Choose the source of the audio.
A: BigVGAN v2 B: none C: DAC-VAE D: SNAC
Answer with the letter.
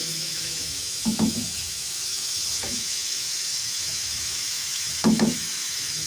C